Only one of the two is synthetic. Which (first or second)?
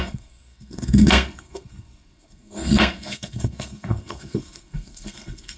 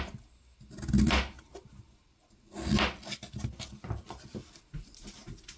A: first